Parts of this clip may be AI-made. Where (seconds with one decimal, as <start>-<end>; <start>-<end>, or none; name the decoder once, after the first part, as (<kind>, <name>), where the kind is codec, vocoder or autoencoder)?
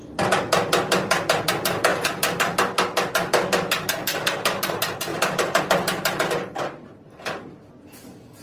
4.1-4.6 (vocoder, BigVGAN v2); 5.1-5.6